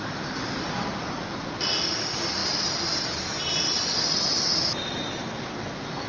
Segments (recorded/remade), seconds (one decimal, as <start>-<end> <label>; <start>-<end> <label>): 0.0-6.1 recorded